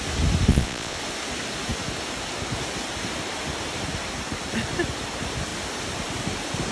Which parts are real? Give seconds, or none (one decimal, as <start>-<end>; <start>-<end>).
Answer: 0.0-0.5; 1.0-6.7